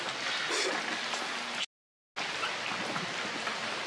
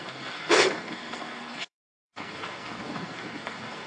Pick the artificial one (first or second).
second